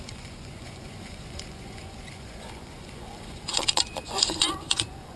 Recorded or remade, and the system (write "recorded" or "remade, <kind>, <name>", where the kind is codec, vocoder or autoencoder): remade, vocoder, Vocos